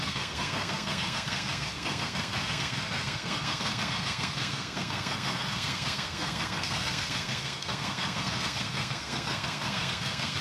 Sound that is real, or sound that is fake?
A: fake